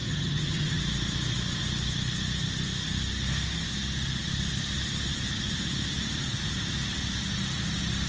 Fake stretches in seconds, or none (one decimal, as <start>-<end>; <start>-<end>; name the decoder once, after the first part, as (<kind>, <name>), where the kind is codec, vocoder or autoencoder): 0.0-0.8 (vocoder, HiFi-GAN)